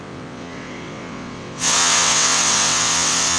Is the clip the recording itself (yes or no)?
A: no